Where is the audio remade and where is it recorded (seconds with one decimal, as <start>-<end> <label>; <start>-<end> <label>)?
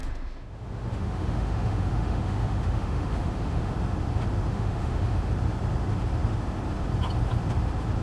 0.0-3.7 remade; 3.7-4.5 recorded; 4.5-5.3 remade; 5.3-8.0 recorded